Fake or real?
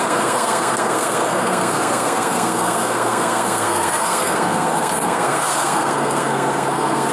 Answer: fake